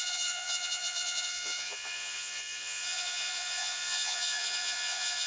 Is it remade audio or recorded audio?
remade